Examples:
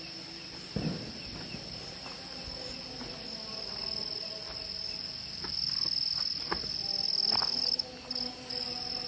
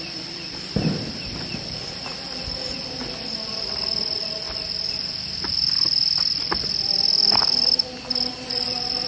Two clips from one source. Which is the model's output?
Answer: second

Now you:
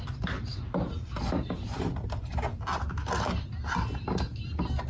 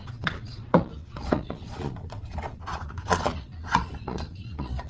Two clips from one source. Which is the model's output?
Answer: second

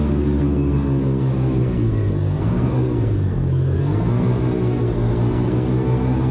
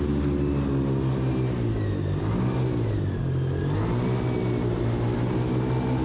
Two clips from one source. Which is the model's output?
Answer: first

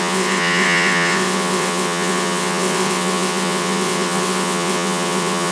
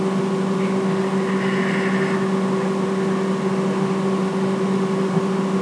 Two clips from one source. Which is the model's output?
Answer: first